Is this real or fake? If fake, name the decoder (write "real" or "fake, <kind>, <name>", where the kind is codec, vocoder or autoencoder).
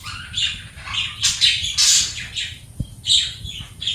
real